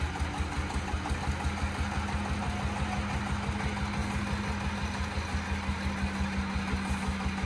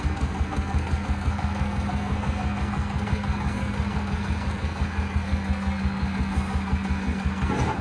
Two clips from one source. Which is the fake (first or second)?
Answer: second